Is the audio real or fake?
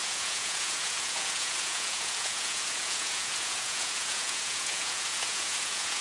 fake